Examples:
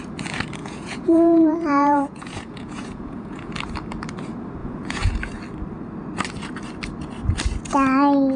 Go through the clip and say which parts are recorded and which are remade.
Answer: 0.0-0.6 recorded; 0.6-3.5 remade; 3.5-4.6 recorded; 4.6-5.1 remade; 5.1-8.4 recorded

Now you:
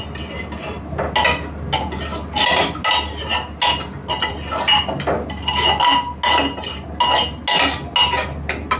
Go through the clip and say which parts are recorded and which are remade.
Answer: 0.0-8.8 recorded

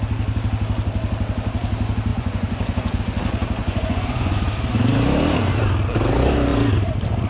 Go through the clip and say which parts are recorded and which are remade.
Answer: 0.0-2.1 recorded; 2.1-3.0 remade; 3.0-3.6 recorded; 3.6-4.5 remade; 4.5-7.3 recorded

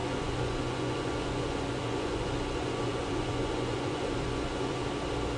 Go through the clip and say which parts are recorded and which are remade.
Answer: 0.0-4.8 remade; 4.8-5.4 recorded

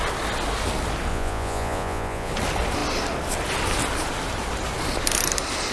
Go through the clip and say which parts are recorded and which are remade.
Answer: 0.0-1.1 recorded; 1.1-2.3 remade; 2.3-5.7 recorded

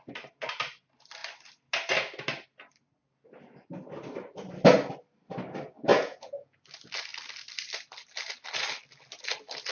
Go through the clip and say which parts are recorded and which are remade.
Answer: 0.0-5.9 recorded; 5.9-6.6 remade; 6.6-9.7 recorded

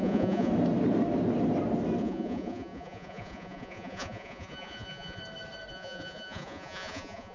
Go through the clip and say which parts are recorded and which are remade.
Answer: 0.0-0.5 remade; 0.5-2.0 recorded; 2.0-5.2 remade; 5.2-5.7 recorded; 5.7-7.3 remade